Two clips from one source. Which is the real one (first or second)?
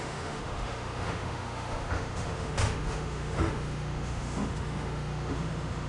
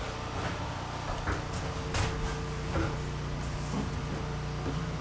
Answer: second